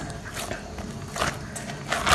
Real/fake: real